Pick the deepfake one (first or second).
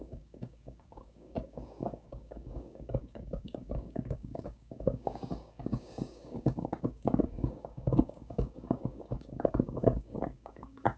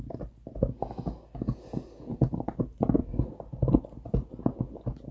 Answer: first